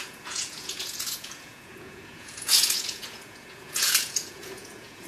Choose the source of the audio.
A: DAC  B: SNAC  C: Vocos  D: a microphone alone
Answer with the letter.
C